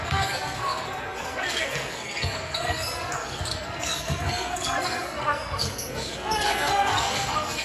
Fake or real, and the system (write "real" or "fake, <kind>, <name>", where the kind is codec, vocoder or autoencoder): fake, codec, SNAC